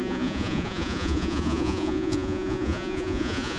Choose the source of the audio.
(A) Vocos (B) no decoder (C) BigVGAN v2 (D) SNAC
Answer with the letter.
A